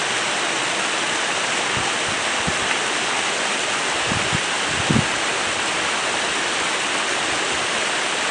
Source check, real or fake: real